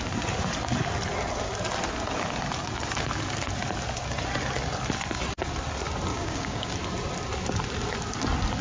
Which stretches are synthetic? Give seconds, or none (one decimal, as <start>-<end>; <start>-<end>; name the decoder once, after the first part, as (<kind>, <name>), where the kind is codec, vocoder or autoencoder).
6.1-6.7 (codec, DAC)